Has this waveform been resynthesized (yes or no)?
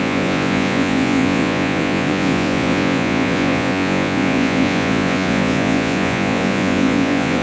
yes